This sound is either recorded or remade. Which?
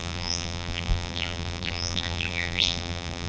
remade